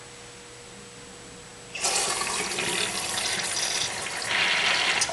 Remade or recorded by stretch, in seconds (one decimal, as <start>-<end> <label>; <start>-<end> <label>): 0.0-5.1 recorded